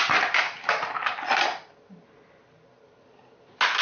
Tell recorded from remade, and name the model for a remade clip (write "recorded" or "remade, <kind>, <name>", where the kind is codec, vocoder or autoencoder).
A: recorded